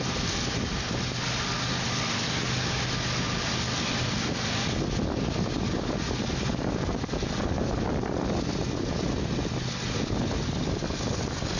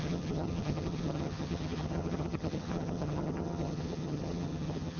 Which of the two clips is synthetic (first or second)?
second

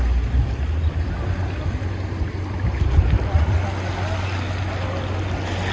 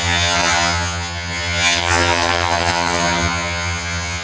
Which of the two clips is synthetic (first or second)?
second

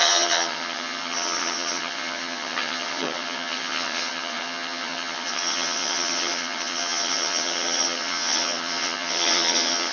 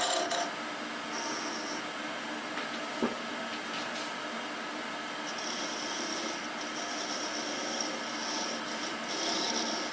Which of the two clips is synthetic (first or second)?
first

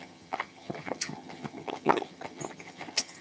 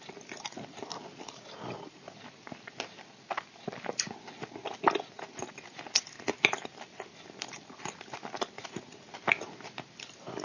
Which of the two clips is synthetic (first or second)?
first